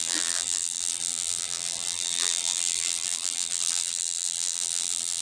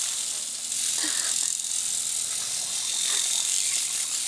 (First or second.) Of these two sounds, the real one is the second